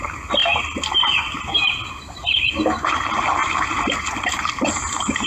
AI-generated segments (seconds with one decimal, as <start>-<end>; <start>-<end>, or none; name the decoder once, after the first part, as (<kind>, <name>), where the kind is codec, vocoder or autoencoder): 0.4-2.5 (vocoder, BigVGAN v2); 3.4-4.5